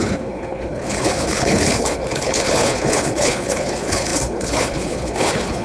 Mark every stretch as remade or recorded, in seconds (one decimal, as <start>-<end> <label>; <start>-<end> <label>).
0.0-5.6 remade